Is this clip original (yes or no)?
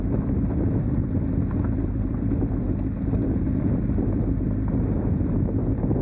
yes